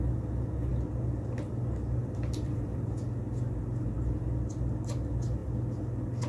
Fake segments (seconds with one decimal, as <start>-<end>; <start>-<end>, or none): 2.0-2.9